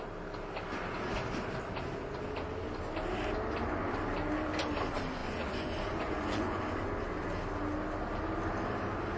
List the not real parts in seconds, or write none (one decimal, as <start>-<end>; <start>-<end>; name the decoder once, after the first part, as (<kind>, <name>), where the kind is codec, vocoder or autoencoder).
5.2-6.6 (vocoder, Vocos)